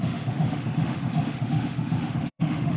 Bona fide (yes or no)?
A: no